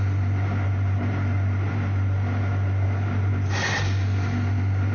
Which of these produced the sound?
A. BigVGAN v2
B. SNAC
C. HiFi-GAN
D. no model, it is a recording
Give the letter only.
D